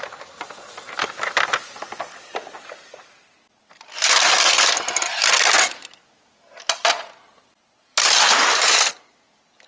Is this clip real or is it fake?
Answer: real